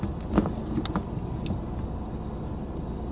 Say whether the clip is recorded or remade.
recorded